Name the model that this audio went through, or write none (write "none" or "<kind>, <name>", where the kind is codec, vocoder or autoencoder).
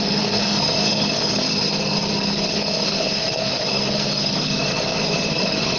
codec, SNAC